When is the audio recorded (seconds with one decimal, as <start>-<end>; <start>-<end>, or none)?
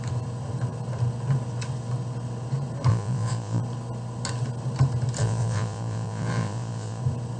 0.0-2.9; 3.6-5.2; 7.0-7.4